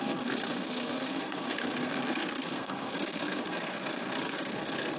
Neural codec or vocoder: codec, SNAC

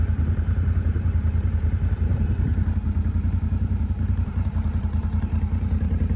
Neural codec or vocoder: vocoder, BigVGAN v2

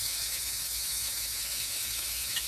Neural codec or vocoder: autoencoder, DAC-VAE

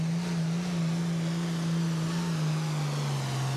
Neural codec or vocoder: none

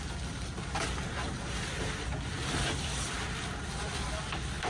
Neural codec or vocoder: none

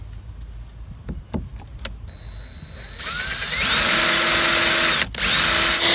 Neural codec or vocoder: none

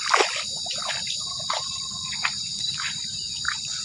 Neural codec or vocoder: vocoder, BigVGAN v2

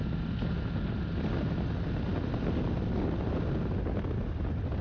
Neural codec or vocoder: none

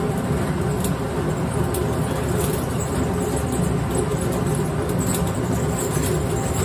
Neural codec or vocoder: none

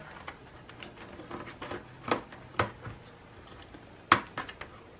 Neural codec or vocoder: none